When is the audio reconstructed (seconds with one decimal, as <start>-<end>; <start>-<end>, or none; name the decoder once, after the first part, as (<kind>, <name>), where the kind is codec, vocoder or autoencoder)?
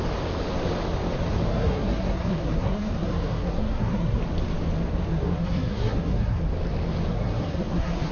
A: 1.5-4.2 (codec, SNAC); 5.1-6.4; 7.1-8.1